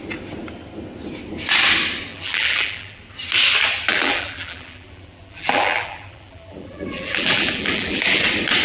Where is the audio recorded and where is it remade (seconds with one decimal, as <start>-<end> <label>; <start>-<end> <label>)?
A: 0.0-2.1 recorded; 2.1-3.0 remade; 3.0-3.9 recorded; 3.9-8.2 remade; 8.2-8.6 recorded